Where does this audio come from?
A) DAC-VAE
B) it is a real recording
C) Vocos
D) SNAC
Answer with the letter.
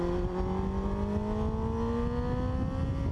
B